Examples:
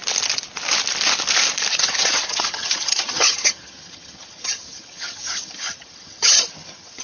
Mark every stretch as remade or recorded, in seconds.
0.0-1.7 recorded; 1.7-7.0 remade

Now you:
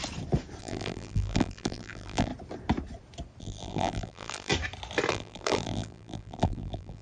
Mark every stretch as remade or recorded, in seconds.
0.0-0.6 recorded; 0.6-2.3 remade; 2.3-3.4 recorded; 3.4-4.5 remade; 4.5-5.1 recorded; 5.1-7.0 remade

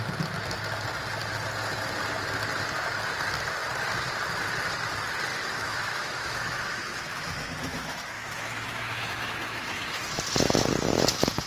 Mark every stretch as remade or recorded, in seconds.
0.0-5.3 recorded; 5.3-10.0 remade; 10.0-11.5 recorded

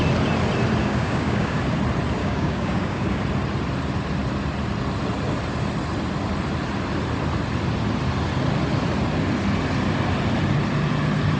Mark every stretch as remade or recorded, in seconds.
0.0-0.8 recorded; 0.8-1.6 remade; 1.6-2.2 recorded; 2.2-3.2 remade; 3.2-11.4 recorded

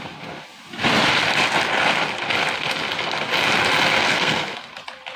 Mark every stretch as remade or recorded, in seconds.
0.0-4.1 recorded; 4.1-4.7 remade; 4.7-5.2 recorded

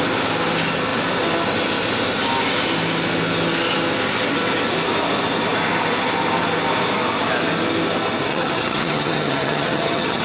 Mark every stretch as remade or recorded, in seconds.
0.0-8.3 recorded; 8.3-10.2 remade

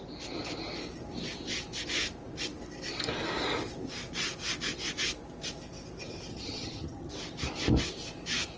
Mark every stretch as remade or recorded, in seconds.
0.0-6.3 recorded; 6.3-7.1 remade; 7.1-8.6 recorded